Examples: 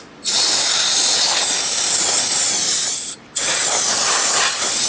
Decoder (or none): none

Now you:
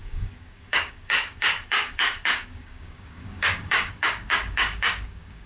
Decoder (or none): codec, DAC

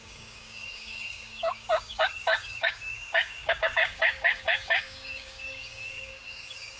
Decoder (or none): codec, DAC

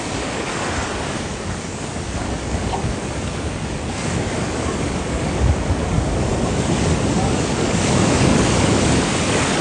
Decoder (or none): codec, DAC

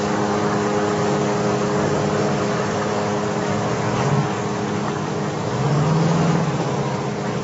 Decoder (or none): codec, DAC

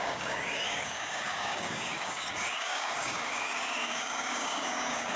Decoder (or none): codec, DAC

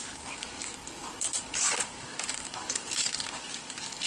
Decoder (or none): codec, DAC